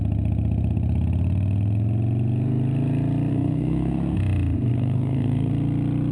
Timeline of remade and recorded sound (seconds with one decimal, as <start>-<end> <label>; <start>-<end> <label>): 0.0-3.3 recorded; 3.3-4.2 remade; 4.2-4.7 recorded; 4.7-5.5 remade; 5.5-6.1 recorded